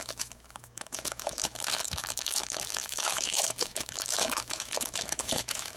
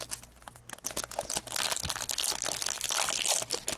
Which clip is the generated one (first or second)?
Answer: first